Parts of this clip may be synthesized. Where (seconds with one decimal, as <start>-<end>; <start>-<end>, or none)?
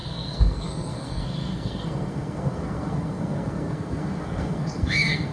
0.0-5.3